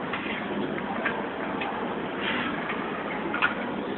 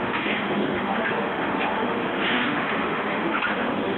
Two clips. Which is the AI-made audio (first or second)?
second